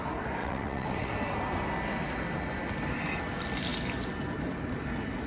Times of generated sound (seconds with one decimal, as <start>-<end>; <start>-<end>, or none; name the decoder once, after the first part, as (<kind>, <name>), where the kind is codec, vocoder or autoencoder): 0.4-1.1 (vocoder, WaveNeXt)